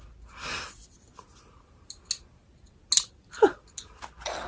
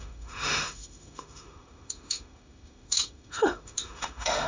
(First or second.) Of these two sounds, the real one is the first